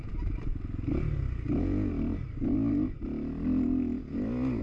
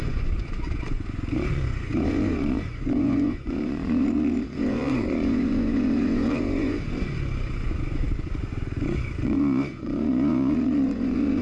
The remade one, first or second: second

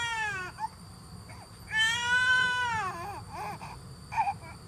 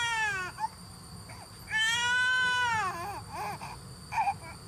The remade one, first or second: first